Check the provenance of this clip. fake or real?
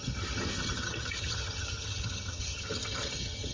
fake